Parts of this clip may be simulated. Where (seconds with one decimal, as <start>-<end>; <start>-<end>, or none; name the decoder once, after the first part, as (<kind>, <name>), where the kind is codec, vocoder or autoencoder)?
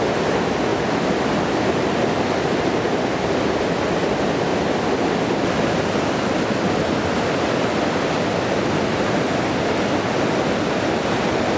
none